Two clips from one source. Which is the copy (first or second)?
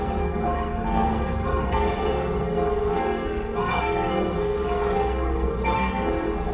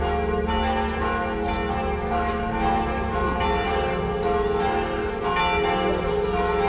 first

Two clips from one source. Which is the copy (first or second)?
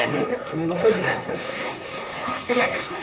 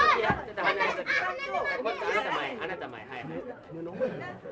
first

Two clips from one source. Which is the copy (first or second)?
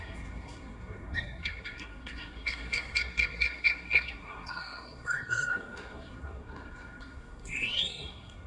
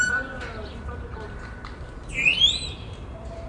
first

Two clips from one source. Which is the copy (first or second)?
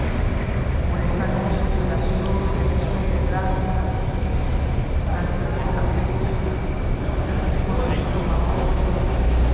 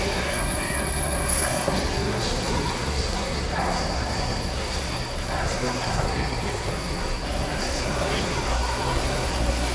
second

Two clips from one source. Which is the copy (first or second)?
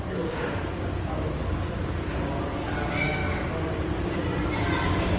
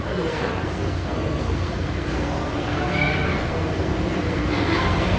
second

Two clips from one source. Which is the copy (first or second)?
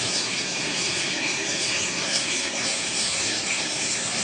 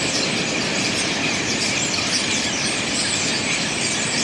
first